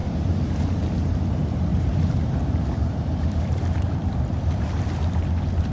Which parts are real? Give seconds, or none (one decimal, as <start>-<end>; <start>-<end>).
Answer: 1.1-1.7; 4.8-5.7